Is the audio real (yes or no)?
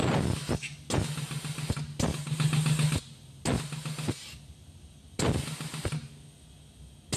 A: yes